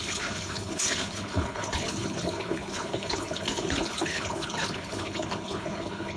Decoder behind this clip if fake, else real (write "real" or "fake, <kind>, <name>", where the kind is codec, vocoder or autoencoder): fake, codec, HILCodec